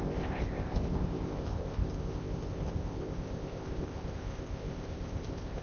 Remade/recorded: remade